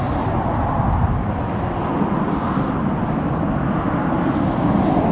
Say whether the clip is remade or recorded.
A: recorded